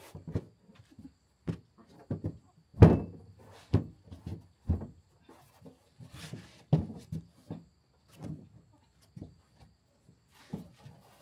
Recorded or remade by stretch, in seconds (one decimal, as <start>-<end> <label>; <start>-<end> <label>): 0.0-11.2 recorded